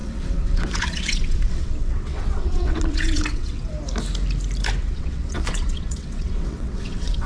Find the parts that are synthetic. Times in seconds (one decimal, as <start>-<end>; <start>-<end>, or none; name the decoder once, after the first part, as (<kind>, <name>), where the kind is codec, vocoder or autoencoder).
0.0-3.7 (vocoder, WaveNeXt); 4.8-7.3